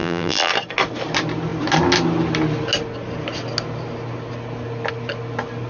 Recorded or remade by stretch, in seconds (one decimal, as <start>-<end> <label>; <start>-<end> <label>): 0.0-0.5 remade; 0.5-5.7 recorded